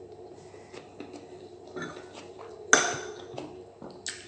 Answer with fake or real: real